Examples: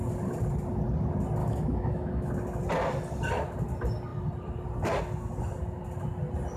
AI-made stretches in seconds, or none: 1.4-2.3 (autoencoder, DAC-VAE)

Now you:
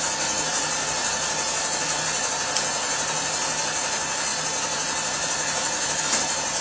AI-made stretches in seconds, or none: none

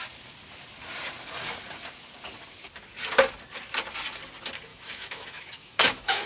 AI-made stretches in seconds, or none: 4.7-6.3 (autoencoder, DAC-VAE)

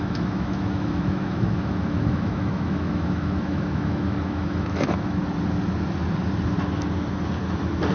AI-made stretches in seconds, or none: 0.0-5.2 (autoencoder, DAC-VAE)